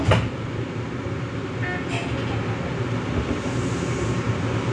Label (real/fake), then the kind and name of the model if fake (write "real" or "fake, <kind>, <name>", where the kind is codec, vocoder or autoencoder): real